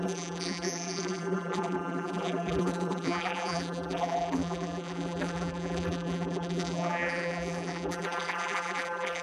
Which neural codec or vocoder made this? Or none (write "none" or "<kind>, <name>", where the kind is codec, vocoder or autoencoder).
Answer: vocoder, BigVGAN v2